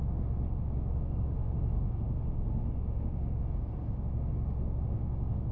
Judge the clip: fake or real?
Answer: fake